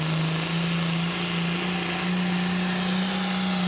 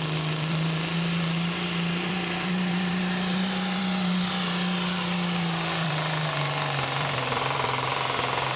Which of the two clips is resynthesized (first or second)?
second